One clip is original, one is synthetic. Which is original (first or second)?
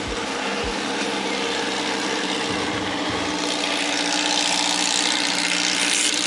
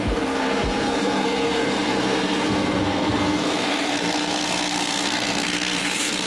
first